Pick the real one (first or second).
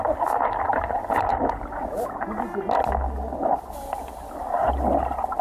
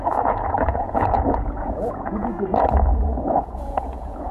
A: first